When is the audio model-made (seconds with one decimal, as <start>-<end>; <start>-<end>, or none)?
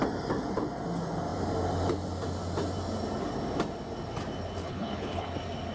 4.6-5.3